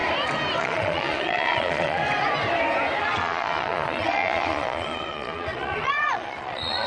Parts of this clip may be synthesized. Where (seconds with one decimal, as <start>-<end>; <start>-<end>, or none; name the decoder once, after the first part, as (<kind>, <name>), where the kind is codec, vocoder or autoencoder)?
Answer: 0.6-2.0 (vocoder, Vocos); 3.0-6.9